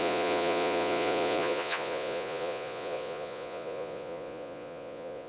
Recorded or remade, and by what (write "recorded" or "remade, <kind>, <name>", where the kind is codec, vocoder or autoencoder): remade, vocoder, Vocos